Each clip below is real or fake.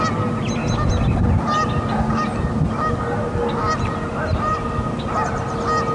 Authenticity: real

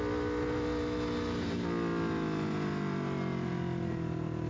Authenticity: real